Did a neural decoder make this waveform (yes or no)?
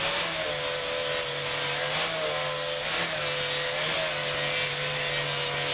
no